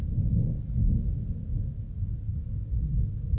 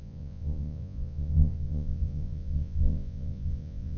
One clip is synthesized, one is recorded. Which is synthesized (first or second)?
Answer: second